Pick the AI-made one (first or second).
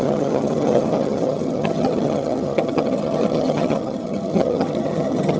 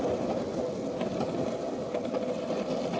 first